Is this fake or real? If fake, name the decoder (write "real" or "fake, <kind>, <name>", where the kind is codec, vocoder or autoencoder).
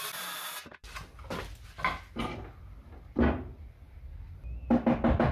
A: real